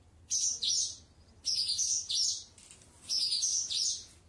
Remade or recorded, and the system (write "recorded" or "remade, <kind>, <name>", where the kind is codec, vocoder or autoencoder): recorded